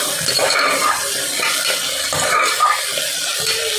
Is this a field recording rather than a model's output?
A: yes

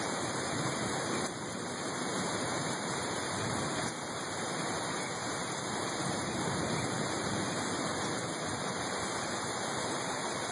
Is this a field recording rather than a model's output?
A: no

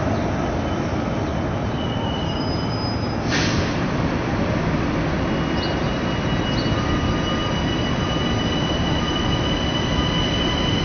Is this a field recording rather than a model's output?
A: yes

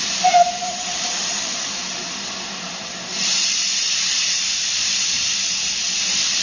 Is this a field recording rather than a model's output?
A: no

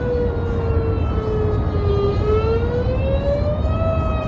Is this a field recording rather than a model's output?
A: yes